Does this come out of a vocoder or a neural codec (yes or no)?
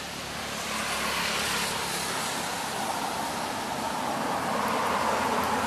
no